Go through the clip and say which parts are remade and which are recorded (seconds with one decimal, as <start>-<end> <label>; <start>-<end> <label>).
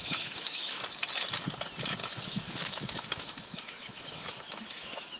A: 0.0-0.8 remade; 0.8-2.0 recorded; 2.0-5.2 remade